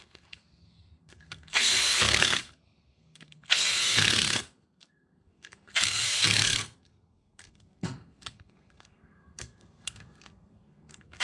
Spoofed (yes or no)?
yes